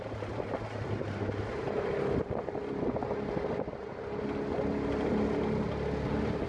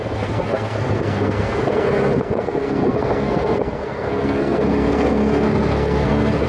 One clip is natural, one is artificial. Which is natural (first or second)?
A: first